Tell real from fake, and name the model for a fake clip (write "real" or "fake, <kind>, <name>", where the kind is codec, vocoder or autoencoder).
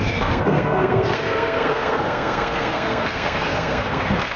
fake, codec, SNAC